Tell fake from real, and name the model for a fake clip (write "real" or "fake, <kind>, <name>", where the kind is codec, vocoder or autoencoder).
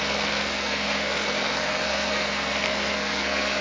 fake, codec, SNAC